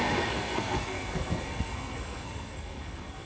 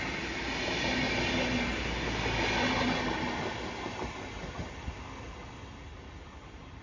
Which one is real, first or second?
second